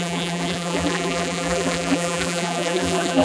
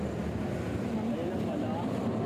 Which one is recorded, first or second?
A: second